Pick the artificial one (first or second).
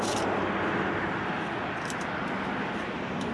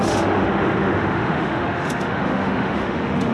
second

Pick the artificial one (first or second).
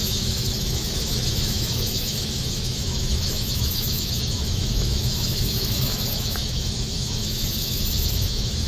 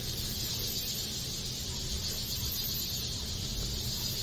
first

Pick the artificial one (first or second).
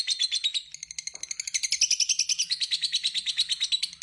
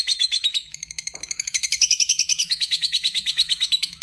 second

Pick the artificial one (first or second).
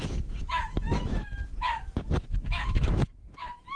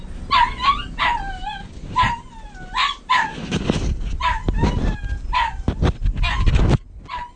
first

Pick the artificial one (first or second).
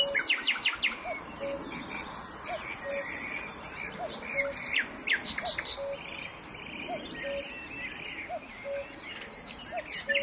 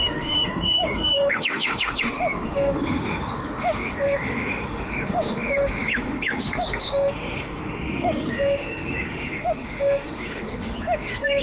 second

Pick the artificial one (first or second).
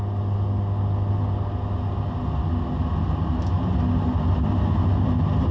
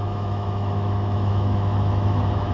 second